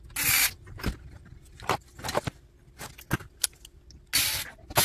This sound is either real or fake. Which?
real